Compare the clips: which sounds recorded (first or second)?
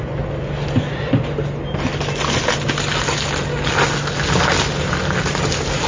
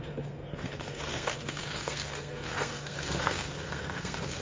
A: first